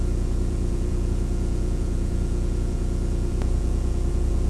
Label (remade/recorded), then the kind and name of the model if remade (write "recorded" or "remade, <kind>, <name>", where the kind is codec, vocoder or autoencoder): remade, vocoder, Vocos